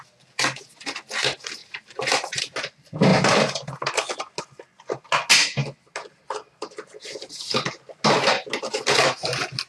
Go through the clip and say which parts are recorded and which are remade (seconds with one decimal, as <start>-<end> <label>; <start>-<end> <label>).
0.0-1.6 recorded; 1.6-2.4 remade; 2.4-9.7 recorded